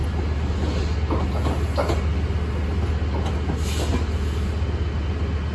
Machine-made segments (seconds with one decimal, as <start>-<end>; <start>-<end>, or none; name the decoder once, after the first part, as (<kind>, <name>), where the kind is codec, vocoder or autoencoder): none